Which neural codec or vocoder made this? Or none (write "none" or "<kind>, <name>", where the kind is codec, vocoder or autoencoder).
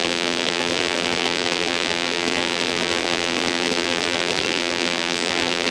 vocoder, BigVGAN v2